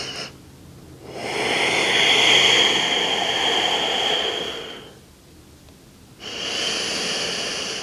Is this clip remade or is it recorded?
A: recorded